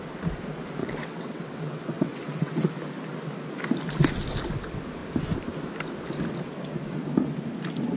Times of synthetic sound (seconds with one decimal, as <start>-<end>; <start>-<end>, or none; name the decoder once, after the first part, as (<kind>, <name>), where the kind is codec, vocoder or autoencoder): 0.8-2.7 (vocoder, WaveNeXt)